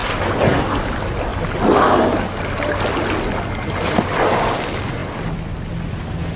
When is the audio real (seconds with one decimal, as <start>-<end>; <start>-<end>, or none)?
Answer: 0.0-6.4